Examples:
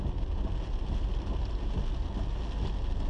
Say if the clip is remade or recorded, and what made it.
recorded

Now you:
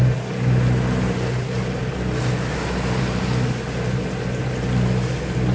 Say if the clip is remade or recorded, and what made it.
recorded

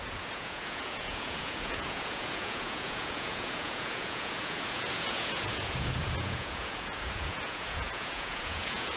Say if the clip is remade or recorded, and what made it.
remade, vocoder, Vocos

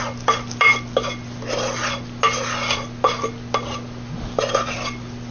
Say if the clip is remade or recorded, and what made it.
recorded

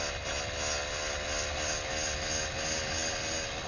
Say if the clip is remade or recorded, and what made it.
recorded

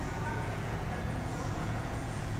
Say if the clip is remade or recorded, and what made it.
remade, vocoder, Vocos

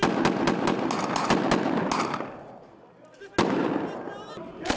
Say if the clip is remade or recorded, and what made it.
recorded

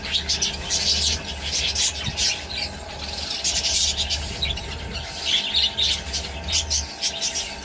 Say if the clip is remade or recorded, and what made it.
recorded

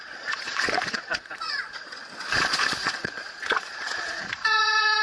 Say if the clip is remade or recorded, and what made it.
remade, vocoder, Vocos